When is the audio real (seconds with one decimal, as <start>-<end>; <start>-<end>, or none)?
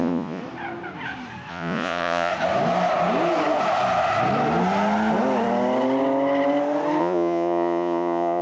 0.4-1.5; 2.3-7.0